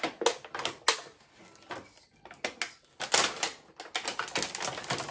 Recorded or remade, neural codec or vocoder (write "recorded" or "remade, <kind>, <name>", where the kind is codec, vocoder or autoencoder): recorded